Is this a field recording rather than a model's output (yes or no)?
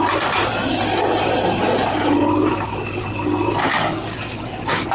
yes